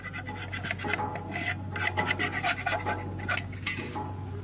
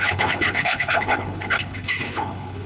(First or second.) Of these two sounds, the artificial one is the second